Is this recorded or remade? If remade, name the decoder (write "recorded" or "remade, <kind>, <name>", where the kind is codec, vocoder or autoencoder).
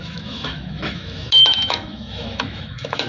remade, autoencoder, DAC-VAE